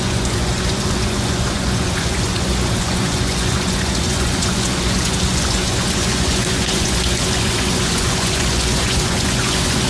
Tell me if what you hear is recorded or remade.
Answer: remade